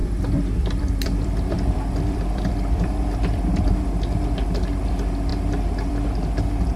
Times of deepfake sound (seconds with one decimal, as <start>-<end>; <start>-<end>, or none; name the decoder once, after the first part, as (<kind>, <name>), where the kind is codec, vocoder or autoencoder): 0.0-3.6 (vocoder, BigVGAN v2)